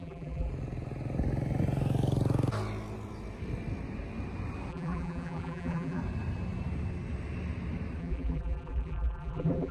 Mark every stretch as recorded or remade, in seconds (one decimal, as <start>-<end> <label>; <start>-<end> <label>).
0.0-0.5 remade; 0.5-4.7 recorded; 4.7-6.0 remade; 6.0-8.0 recorded; 8.0-9.7 remade